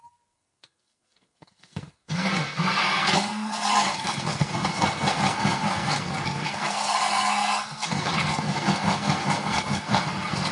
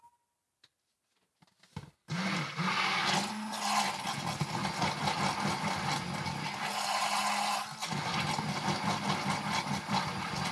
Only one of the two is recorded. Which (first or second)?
second